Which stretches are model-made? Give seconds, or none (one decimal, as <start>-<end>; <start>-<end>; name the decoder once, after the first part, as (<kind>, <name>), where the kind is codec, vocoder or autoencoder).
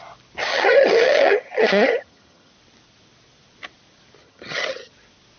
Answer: 0.5-2.5 (vocoder, HiFi-GAN); 4.2-4.9